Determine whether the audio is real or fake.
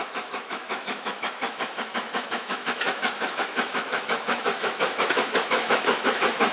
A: fake